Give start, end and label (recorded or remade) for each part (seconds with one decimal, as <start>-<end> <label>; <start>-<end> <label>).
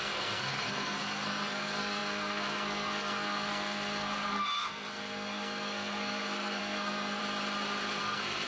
0.0-7.2 remade; 7.2-8.0 recorded; 8.0-8.5 remade